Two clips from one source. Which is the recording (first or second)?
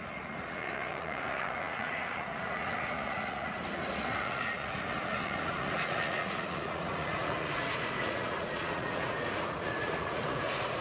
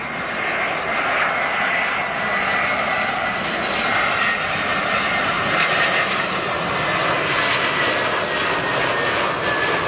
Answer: second